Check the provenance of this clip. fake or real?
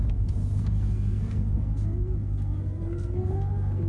fake